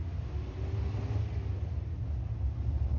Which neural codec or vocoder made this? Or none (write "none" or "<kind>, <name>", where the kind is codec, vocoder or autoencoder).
none